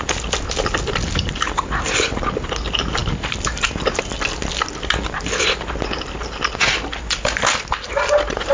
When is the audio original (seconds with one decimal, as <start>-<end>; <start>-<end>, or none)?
0.0-8.5